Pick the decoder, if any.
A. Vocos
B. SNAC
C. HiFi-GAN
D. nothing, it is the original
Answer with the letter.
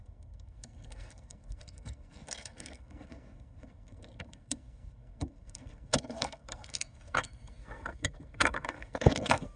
B